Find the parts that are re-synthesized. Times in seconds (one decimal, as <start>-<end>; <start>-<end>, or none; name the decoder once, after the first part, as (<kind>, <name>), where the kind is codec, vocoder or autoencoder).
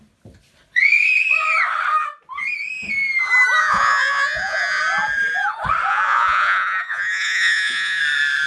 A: 3.6-4.8 (vocoder, Vocos); 5.9-8.0